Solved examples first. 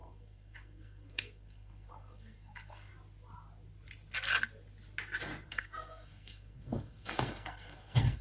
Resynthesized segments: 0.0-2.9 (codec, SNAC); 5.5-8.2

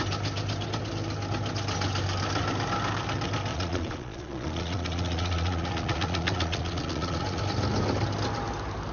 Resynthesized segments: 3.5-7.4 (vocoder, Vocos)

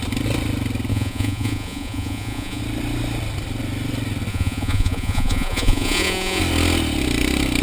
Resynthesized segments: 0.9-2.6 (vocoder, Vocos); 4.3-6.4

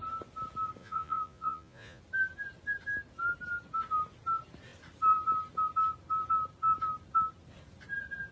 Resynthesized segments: 0.8-2.0 (vocoder, Vocos)

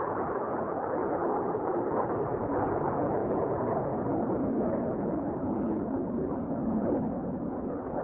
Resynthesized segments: 0.0-8.0 (codec, HILCodec)

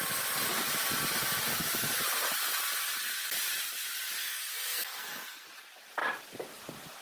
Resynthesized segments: 4.2-5.5 (codec, SNAC)

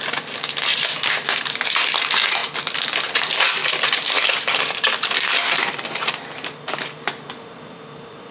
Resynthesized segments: 0.7-1.7 (vocoder, BigVGAN v2); 3.6-6.1